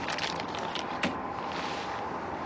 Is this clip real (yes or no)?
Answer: yes